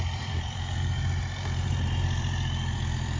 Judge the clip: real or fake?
fake